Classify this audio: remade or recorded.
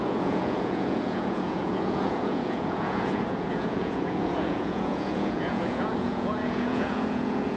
remade